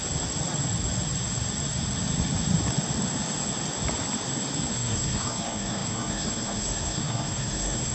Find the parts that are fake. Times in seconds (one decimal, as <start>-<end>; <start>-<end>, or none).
4.7-7.9